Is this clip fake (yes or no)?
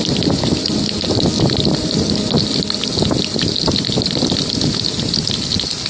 no